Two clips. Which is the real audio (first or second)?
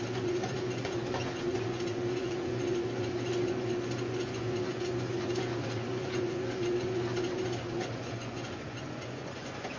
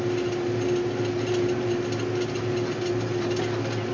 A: second